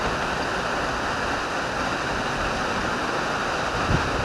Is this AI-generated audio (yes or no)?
no